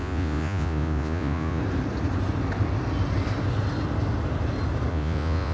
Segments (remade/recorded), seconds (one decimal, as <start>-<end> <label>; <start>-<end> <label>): 0.0-1.6 remade; 1.6-4.9 recorded; 4.9-5.5 remade